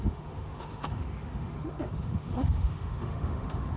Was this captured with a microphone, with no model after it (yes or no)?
no